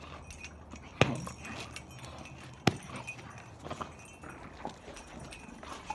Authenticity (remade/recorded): recorded